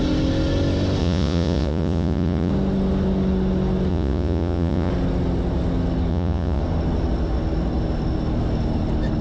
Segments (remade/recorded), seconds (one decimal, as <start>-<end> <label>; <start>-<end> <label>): 0.0-1.0 recorded; 1.0-2.5 remade; 2.5-3.9 recorded; 3.9-4.9 remade; 4.9-6.1 recorded; 6.1-6.6 remade; 6.6-9.2 recorded